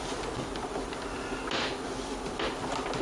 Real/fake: real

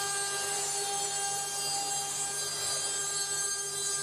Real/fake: real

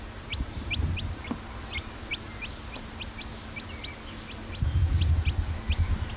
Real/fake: real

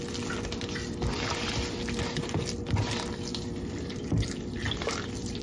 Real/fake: real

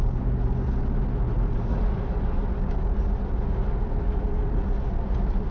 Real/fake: real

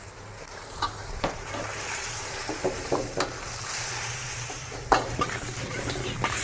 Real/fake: fake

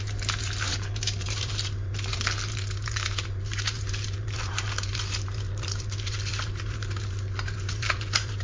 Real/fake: fake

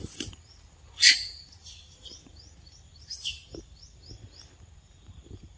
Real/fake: fake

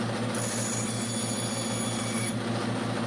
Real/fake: real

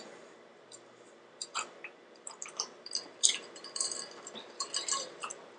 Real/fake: fake